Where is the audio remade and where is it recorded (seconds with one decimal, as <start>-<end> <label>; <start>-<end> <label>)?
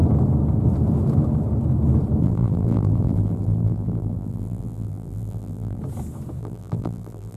0.0-2.2 recorded; 2.2-5.8 remade; 5.8-6.4 recorded; 6.4-7.4 remade